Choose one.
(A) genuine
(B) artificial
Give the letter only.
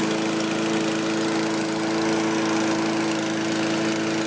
A